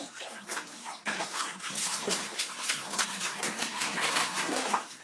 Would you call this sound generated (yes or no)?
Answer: yes